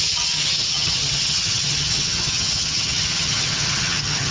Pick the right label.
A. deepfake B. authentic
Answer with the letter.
A